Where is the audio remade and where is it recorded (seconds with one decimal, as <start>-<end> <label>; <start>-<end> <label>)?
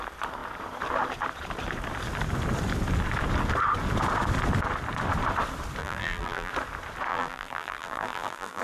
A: 0.0-5.8 recorded; 5.8-6.5 remade; 6.5-7.1 recorded; 7.1-8.6 remade